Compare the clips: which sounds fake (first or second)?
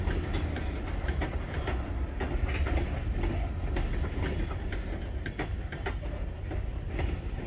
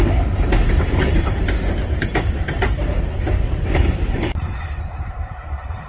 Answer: second